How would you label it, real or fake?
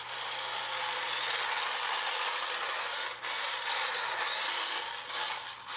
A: real